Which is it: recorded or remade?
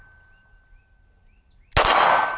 recorded